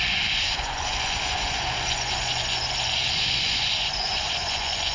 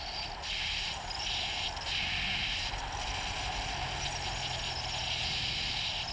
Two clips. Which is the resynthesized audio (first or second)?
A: first